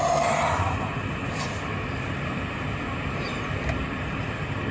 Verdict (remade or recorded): recorded